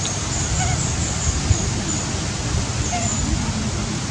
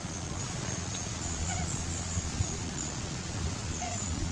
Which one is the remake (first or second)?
second